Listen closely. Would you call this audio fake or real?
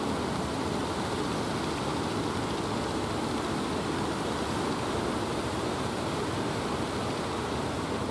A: real